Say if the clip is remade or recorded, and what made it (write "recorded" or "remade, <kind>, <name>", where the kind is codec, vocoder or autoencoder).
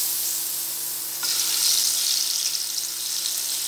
recorded